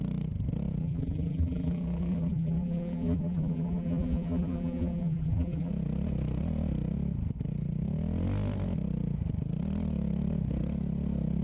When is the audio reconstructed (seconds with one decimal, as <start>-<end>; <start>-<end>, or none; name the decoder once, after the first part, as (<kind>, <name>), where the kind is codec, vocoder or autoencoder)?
0.8-5.7 (vocoder, BigVGAN v2)